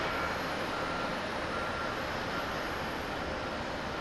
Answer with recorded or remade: recorded